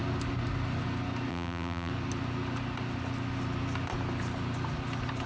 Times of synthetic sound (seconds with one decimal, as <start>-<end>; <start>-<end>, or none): 1.3-1.9